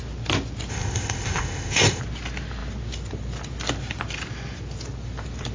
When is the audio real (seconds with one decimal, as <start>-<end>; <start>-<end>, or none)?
0.0-0.7; 2.0-5.5